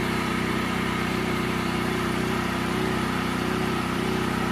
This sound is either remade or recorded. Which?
remade